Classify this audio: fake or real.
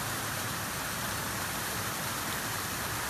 real